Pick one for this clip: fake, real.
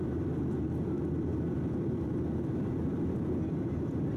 fake